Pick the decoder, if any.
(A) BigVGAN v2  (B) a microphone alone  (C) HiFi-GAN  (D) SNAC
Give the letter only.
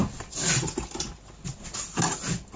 B